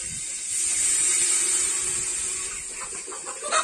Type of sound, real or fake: real